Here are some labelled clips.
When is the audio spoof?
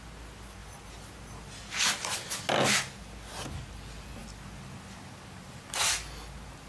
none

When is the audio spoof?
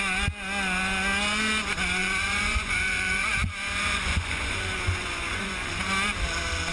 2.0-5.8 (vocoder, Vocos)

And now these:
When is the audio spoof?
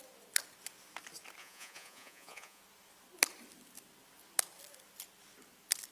1.4-2.6 (vocoder, Vocos)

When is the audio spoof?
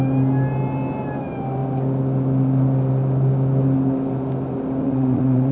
4.8-5.5 (vocoder, Vocos)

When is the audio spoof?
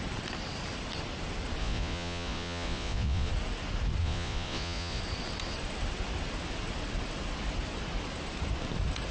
1.6-3.3 (vocoder, Vocos); 4.0-5.0